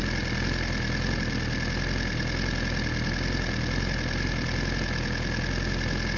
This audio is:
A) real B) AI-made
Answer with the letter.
A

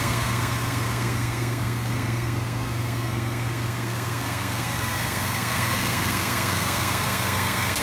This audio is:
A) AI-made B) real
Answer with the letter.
A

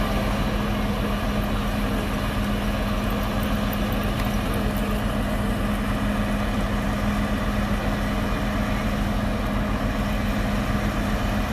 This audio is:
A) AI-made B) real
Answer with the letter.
B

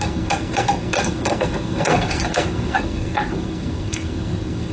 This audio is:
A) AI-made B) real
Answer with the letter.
A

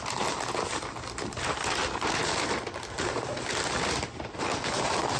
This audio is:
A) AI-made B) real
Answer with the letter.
B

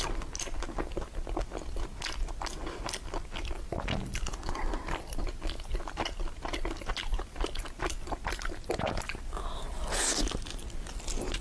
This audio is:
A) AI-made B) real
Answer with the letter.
B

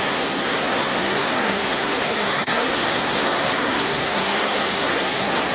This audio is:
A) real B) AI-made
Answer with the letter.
B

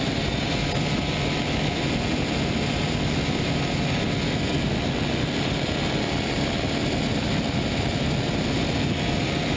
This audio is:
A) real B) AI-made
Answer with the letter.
A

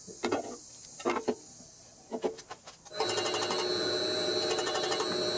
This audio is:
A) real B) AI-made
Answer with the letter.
A